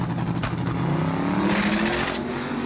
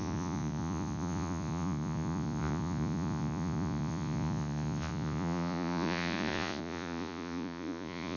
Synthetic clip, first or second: second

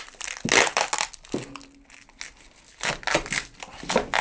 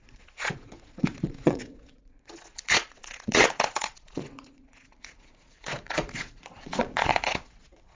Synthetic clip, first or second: second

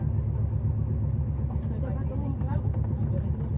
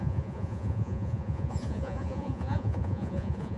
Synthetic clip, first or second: second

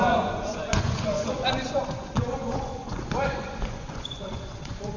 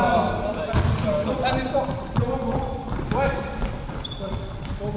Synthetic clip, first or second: first